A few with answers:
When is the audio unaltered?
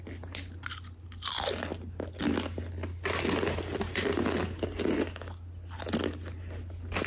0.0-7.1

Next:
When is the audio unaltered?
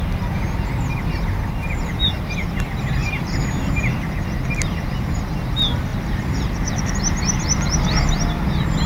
0.0-3.0; 3.7-5.9; 6.9-8.9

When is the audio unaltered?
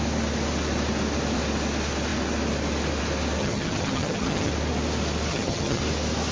0.0-3.4; 4.5-5.3; 5.8-6.3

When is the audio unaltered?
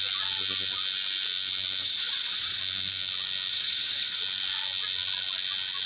0.0-1.8; 2.6-3.5; 4.2-5.9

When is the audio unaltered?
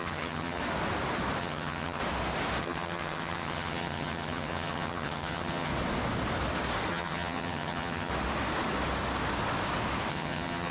0.6-1.4; 2.0-2.6; 5.7-6.9; 8.1-10.1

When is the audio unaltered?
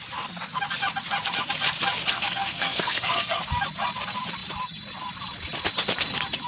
0.0-2.1; 3.4-6.5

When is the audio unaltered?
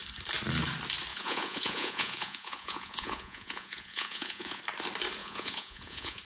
0.0-1.1; 4.6-5.2